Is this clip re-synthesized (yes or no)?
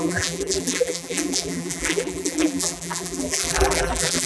yes